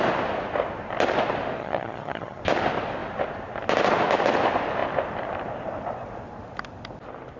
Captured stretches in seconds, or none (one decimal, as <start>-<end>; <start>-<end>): 0.0-1.6; 2.4-7.4